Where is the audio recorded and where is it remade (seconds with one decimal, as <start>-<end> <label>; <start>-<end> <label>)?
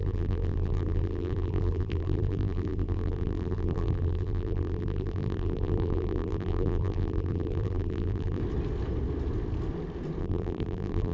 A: 0.0-8.4 remade; 8.4-10.2 recorded; 10.2-11.1 remade